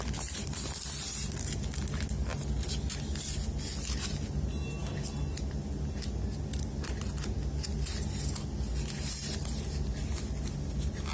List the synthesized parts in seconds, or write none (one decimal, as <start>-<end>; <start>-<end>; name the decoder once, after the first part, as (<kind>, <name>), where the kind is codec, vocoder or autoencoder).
none